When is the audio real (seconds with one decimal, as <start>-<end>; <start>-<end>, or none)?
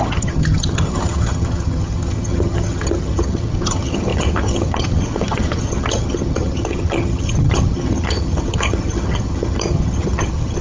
none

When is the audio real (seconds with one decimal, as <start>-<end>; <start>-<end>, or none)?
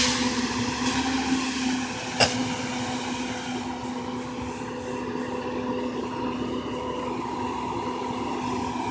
0.0-8.9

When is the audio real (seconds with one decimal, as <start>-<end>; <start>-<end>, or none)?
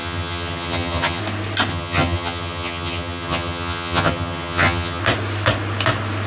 1.2-1.7; 5.0-6.3